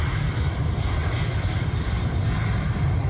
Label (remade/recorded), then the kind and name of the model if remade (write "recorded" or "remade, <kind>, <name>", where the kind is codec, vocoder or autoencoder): recorded